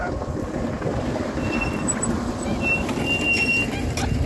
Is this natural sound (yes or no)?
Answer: yes